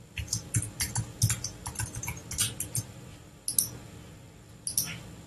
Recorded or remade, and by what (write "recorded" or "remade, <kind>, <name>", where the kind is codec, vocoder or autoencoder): recorded